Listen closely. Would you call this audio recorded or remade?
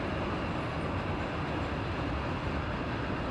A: recorded